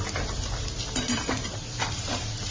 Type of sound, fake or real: fake